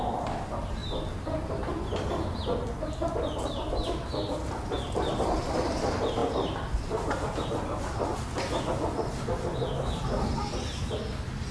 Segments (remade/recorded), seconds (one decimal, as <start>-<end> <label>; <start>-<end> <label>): 0.0-11.5 recorded